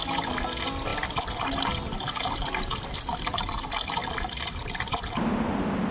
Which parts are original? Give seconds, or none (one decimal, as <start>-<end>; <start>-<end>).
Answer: 0.0-0.9; 3.4-4.0; 4.9-5.9